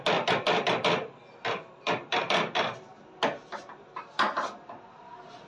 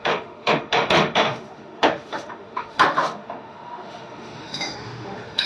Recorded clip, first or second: first